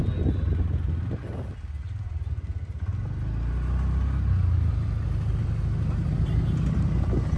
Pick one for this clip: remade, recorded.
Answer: recorded